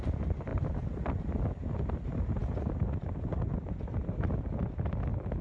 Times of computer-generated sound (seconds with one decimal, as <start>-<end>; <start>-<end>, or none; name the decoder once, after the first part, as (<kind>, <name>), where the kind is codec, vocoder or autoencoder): none